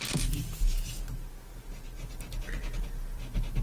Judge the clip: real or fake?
real